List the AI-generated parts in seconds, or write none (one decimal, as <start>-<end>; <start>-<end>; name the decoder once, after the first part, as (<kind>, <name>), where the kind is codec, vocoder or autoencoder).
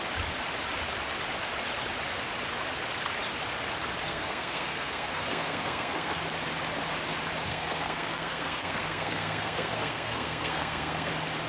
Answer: 4.1-6.2 (codec, SNAC); 7.5-11.1